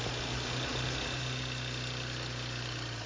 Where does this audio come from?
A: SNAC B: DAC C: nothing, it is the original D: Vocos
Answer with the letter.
C